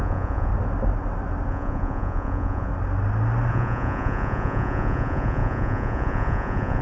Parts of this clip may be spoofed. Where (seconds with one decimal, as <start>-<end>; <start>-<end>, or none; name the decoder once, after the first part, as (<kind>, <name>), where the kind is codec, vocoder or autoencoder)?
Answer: 0.0-0.5 (vocoder, Vocos); 1.5-2.7; 3.5-6.8